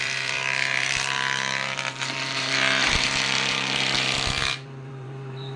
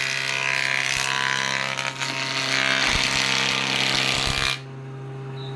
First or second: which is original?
second